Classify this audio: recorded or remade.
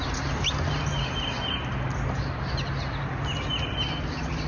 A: recorded